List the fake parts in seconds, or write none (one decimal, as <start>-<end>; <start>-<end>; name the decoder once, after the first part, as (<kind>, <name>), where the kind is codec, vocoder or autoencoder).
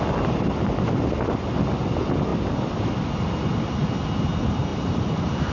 4.7-5.5 (vocoder, BigVGAN v2)